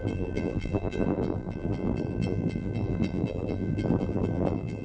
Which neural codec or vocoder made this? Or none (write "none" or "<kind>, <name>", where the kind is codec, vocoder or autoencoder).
vocoder, BigVGAN v2